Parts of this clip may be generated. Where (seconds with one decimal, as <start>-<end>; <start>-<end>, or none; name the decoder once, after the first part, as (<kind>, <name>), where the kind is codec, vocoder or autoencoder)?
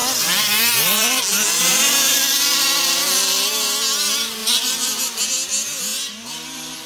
0.0-1.2 (vocoder, BigVGAN v2); 1.6-3.5; 4.4-5.2